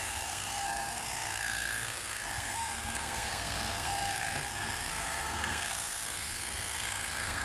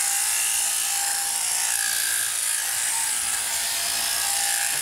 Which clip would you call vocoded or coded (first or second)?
first